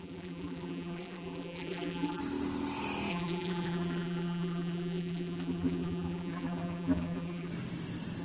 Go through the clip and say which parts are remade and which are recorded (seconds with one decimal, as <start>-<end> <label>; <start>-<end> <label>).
0.0-2.2 remade; 2.2-3.1 recorded; 3.1-7.5 remade; 7.5-8.2 recorded